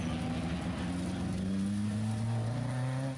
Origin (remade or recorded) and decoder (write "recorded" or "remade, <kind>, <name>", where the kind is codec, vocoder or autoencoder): recorded